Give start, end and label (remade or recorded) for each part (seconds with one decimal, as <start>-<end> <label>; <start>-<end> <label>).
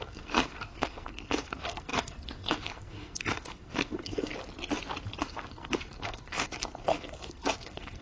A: 0.0-4.3 remade; 4.3-5.2 recorded; 5.2-8.0 remade